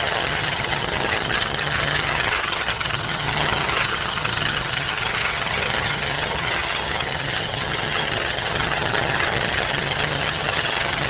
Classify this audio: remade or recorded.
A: remade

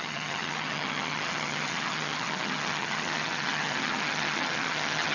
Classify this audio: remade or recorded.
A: remade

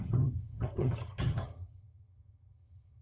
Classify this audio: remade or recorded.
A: remade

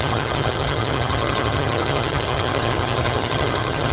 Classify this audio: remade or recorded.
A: remade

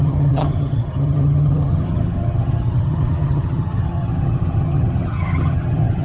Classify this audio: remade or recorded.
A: remade